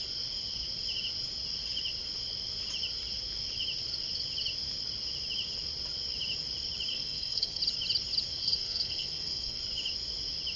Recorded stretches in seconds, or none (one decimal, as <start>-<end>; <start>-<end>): 0.0-6.9; 7.6-8.3; 9.6-10.6